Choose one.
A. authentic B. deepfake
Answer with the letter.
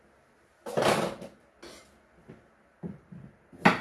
A